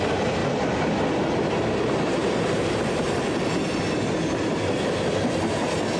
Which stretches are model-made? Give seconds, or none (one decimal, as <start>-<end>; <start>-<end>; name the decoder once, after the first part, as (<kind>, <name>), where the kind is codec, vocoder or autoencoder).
none